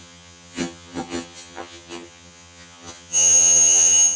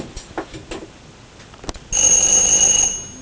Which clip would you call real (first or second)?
second